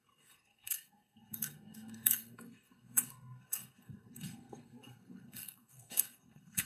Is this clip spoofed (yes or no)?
yes